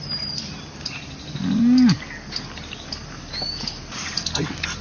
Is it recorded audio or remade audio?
recorded